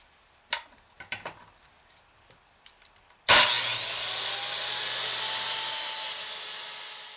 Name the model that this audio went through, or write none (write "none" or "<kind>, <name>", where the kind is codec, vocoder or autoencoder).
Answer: none